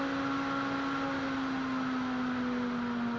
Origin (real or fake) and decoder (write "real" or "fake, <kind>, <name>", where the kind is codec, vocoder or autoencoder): real